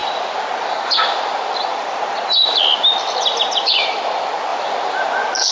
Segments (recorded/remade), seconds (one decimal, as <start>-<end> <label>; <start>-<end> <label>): 0.0-5.5 recorded